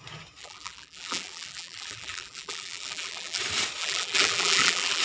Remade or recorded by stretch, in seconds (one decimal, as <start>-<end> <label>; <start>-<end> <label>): 0.0-0.4 recorded; 0.4-3.4 remade; 3.4-3.8 recorded; 3.8-5.0 remade